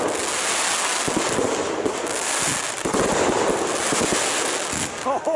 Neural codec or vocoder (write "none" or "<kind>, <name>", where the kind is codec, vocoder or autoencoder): none